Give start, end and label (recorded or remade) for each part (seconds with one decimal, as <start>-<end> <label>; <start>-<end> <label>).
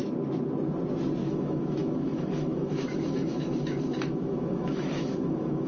0.0-1.3 recorded; 1.3-5.7 remade